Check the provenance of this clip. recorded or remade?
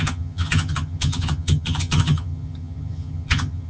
remade